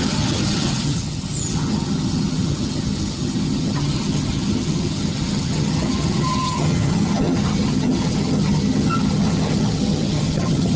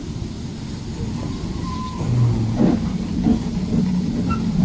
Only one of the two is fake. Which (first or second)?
first